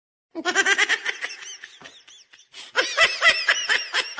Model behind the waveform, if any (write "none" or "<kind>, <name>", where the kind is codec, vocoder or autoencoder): none